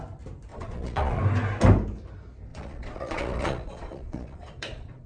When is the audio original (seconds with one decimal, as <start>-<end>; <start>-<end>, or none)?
0.0-0.5; 1.2-2.5